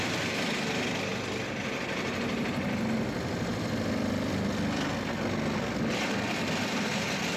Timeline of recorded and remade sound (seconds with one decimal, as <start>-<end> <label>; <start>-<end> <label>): 0.0-3.5 recorded; 3.5-4.9 remade; 4.9-6.3 recorded; 6.3-6.9 remade; 6.9-7.4 recorded